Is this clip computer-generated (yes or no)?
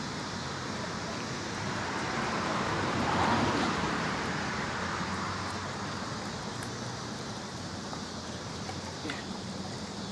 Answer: yes